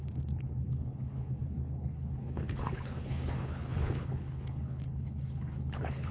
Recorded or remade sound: remade